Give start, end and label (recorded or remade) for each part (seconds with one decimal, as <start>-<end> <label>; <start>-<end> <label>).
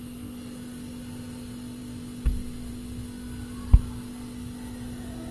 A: 0.0-5.3 recorded